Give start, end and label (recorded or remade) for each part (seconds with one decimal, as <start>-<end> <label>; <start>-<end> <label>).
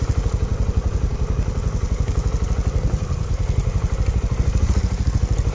0.0-5.5 recorded